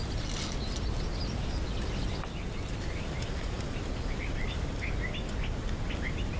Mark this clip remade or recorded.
recorded